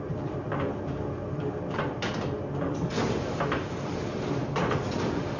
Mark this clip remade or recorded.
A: remade